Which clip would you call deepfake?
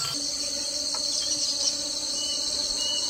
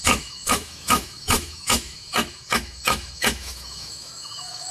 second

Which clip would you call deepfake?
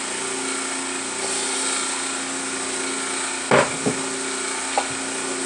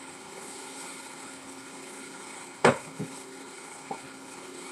second